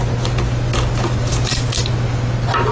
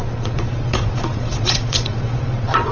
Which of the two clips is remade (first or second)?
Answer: second